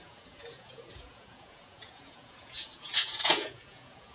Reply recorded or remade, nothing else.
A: remade